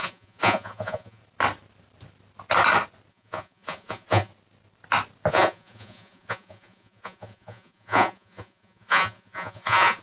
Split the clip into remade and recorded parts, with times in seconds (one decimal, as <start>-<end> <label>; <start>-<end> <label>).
0.0-1.2 remade; 1.2-3.1 recorded; 3.1-4.3 remade; 4.3-5.3 recorded; 5.3-10.0 remade